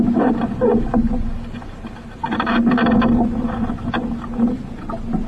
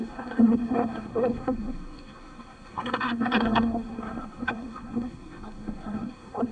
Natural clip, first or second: first